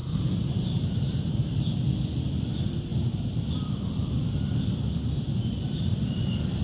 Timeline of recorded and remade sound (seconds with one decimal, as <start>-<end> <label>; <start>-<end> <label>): 0.0-1.8 remade; 1.8-2.9 recorded; 2.9-3.4 remade; 3.4-6.6 recorded